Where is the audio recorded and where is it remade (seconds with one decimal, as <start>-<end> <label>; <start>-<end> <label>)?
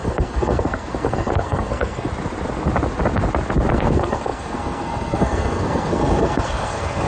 0.0-2.1 remade; 2.1-3.7 recorded; 3.7-7.1 remade